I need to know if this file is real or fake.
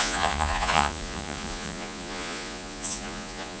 fake